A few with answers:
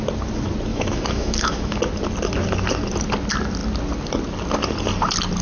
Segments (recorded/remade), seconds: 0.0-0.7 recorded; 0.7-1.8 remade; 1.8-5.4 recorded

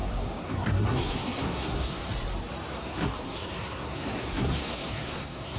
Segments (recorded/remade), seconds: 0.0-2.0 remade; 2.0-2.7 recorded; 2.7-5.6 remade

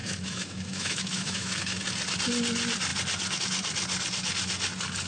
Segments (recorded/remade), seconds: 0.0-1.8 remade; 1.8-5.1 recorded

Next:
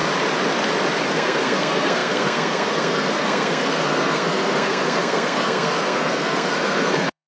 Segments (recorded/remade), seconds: 0.0-1.1 recorded; 1.1-7.3 remade

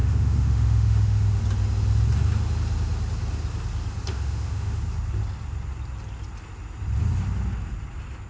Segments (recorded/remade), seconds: 0.0-1.4 remade; 1.4-4.1 recorded; 4.1-4.8 remade; 4.8-8.3 recorded

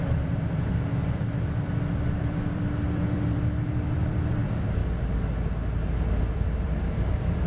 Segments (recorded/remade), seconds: 0.0-0.7 remade; 0.7-2.2 recorded; 2.2-4.8 remade; 4.8-6.2 recorded; 6.2-7.5 remade

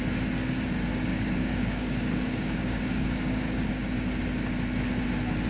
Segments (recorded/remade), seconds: 0.0-1.1 recorded; 1.1-3.7 remade; 3.7-5.5 recorded